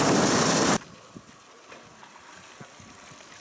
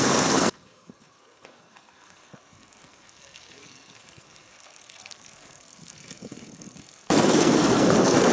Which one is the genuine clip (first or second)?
first